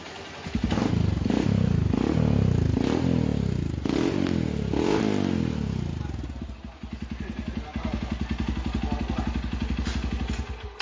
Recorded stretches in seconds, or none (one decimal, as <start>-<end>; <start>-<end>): 0.0-10.8